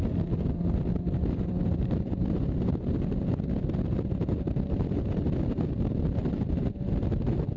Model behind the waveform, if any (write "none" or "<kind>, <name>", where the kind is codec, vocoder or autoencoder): none